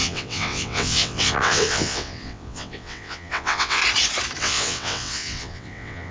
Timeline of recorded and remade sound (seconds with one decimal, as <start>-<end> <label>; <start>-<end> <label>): 0.0-3.8 remade; 3.8-4.4 recorded; 4.4-6.1 remade